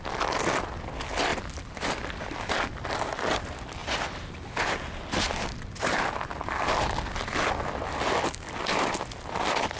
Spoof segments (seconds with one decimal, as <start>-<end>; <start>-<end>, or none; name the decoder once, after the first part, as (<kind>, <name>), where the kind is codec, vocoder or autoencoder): 1.3-1.9 (vocoder, BigVGAN v2)